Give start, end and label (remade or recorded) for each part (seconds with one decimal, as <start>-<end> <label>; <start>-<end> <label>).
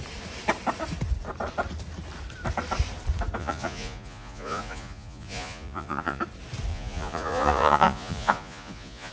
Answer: 0.0-3.4 recorded; 3.4-6.2 remade; 6.2-6.7 recorded; 6.7-9.1 remade